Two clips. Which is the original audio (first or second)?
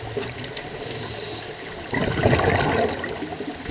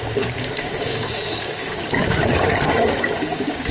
first